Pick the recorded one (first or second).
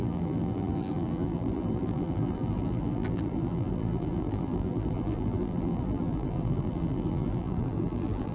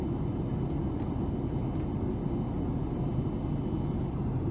second